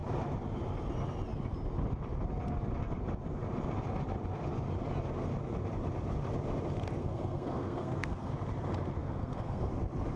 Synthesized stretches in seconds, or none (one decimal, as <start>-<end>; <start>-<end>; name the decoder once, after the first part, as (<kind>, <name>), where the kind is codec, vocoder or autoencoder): 7.0-8.3 (codec, SNAC); 9.0-9.7